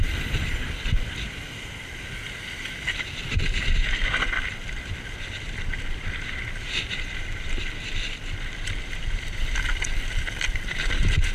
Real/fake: fake